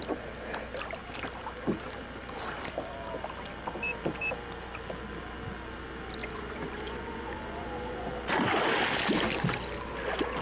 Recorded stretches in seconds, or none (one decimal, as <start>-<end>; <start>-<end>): 0.0-6.2; 8.1-10.4